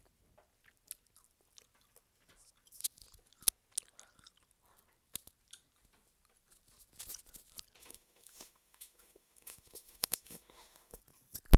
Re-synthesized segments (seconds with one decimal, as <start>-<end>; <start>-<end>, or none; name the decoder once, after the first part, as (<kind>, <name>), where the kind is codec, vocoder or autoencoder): 7.8-11.0 (autoencoder, DAC-VAE)